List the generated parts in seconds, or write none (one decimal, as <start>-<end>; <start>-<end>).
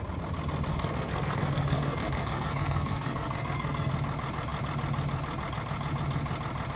0.7-3.9